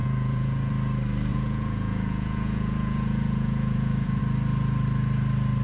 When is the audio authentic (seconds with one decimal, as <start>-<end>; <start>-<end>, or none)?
0.7-1.3; 4.2-5.6

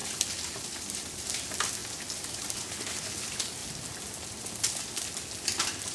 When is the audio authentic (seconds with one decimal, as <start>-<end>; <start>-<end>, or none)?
0.0-3.6; 4.6-5.9